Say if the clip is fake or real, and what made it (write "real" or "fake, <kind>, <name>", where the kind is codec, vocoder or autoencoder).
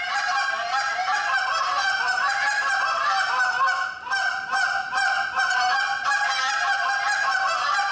real